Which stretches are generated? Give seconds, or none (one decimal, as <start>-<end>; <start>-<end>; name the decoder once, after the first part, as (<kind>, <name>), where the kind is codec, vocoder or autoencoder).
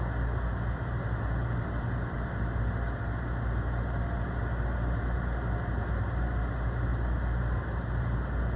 none